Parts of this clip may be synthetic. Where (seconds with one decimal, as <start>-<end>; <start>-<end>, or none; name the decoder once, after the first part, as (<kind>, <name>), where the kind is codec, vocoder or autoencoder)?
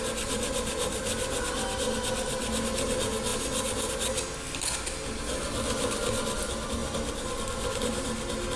none